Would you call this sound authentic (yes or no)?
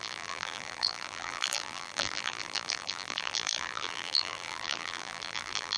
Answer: no